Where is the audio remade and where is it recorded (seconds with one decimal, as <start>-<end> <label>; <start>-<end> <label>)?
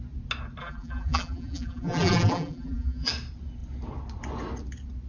0.0-0.6 recorded; 0.6-3.1 remade; 3.1-5.1 recorded